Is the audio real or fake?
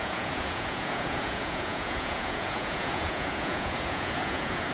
fake